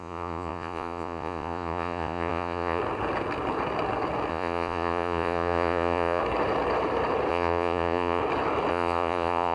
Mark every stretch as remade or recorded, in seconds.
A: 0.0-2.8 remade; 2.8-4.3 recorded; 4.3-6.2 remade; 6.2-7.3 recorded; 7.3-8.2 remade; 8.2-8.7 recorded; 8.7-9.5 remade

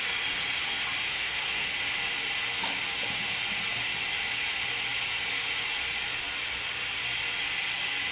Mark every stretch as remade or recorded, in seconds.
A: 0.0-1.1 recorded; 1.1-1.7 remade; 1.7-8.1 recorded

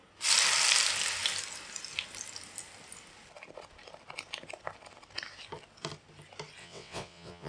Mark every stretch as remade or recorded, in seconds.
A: 0.0-6.6 recorded; 6.6-7.5 remade

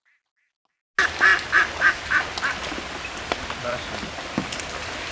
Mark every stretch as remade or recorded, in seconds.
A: 0.0-5.1 recorded